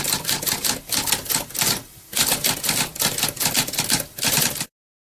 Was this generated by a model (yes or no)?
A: no